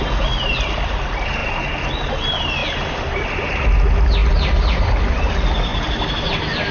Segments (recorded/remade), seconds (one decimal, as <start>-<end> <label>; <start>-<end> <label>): 0.0-2.6 recorded; 2.6-3.6 remade; 3.6-5.7 recorded; 5.7-6.3 remade; 6.3-6.7 recorded

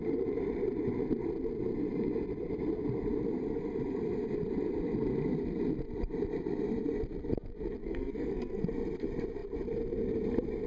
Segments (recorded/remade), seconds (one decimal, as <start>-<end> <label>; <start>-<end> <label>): 0.0-7.8 recorded; 7.8-8.6 remade; 8.6-10.7 recorded

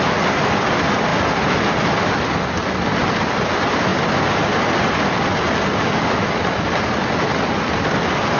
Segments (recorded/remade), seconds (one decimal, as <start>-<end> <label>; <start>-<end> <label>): 0.0-8.4 recorded

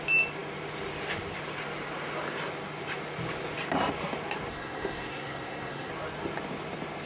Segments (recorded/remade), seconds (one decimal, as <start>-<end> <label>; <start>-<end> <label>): 0.0-4.5 recorded; 4.5-5.9 remade; 5.9-7.1 recorded

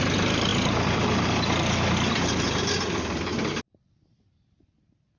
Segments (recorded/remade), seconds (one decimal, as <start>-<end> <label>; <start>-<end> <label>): 0.0-5.2 recorded

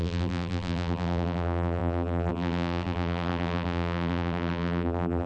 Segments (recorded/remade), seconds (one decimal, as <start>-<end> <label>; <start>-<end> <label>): 0.0-5.3 remade

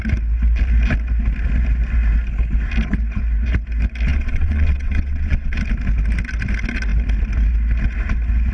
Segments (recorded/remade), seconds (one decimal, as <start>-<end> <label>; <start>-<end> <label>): 0.0-4.1 recorded; 4.1-5.6 remade; 5.6-8.5 recorded

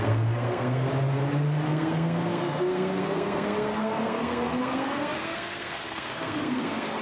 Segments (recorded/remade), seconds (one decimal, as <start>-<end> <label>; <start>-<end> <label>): 0.0-0.9 remade; 0.9-1.7 recorded; 1.7-7.0 remade